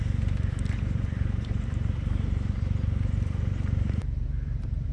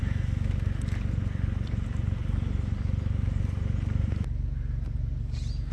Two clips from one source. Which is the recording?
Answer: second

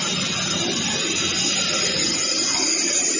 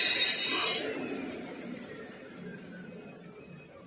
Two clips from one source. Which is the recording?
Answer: second